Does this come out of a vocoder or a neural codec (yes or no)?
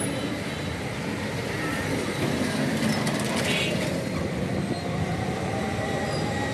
no